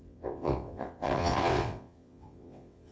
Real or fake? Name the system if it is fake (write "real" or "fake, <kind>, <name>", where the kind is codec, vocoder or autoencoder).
fake, vocoder, WaveNeXt